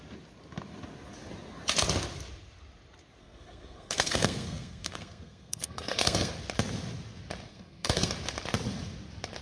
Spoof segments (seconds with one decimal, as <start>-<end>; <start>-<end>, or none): 3.2-6.3; 7.5-8.1